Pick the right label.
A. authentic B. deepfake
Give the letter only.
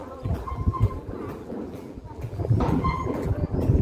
B